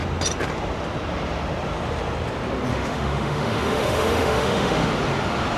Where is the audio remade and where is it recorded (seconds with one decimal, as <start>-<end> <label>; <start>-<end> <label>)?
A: 0.0-2.7 recorded; 2.7-4.9 remade; 4.9-5.6 recorded